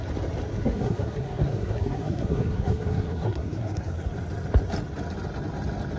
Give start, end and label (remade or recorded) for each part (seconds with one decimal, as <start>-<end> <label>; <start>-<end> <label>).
0.0-0.5 recorded; 0.5-4.1 remade; 4.1-6.0 recorded